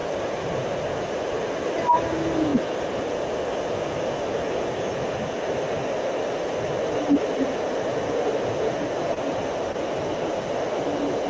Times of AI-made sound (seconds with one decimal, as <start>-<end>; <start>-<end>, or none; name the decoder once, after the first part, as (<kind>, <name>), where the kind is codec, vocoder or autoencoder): none